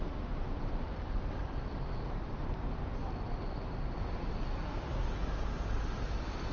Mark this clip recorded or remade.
recorded